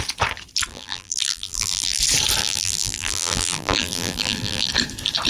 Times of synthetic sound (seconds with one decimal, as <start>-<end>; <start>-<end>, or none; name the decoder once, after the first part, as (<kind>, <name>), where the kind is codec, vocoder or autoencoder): 0.7-2.0 (vocoder, BigVGAN v2); 2.4-4.7